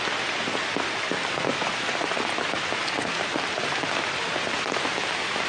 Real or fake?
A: real